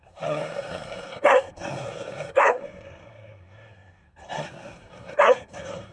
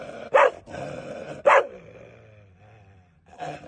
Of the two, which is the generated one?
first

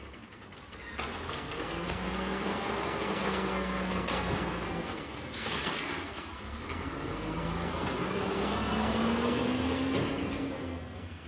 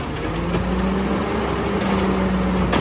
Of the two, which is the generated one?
first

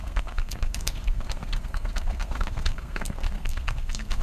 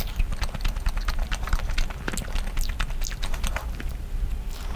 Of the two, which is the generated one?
first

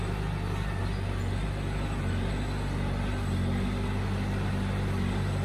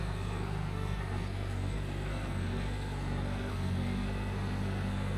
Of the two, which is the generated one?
second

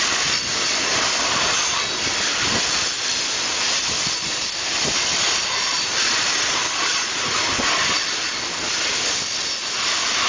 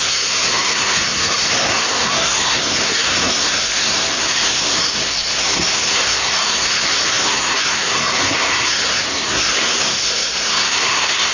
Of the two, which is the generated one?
second